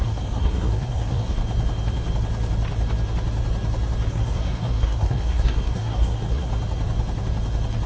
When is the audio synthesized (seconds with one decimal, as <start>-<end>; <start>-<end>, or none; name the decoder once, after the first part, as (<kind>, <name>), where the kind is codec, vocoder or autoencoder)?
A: 0.0-1.4 (codec, SNAC); 4.1-6.5

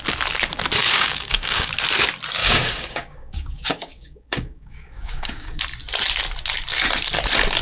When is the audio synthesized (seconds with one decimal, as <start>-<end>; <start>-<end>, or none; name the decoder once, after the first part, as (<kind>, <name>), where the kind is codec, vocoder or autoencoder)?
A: 0.8-1.7 (codec, DAC); 2.4-5.6

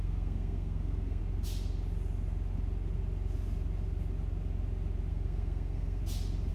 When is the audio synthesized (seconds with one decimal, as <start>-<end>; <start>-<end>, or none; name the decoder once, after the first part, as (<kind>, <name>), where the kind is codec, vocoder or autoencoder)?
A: 0.0-1.2 (codec, SNAC); 5.1-6.0

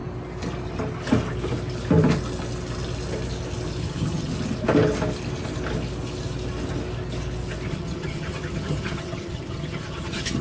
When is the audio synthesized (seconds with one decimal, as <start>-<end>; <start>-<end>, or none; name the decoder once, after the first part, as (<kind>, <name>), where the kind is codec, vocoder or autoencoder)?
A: 3.8-4.3 (vocoder, HiFi-GAN); 7.7-10.4

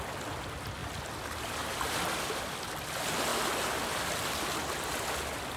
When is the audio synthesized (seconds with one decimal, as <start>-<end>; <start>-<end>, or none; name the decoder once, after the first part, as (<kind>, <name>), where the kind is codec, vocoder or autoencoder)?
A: 0.8-2.7 (vocoder, BigVGAN v2)

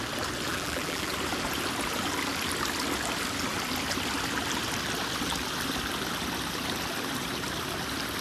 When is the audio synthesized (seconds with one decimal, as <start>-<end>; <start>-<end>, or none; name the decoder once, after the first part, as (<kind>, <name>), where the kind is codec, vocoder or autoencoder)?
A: 0.5-1.1 (vocoder, BigVGAN v2)

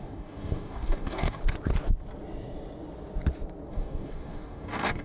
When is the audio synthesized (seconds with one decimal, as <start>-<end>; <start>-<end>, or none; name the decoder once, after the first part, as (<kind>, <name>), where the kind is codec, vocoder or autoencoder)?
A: 0.0-1.4 (codec, DAC); 3.7-5.0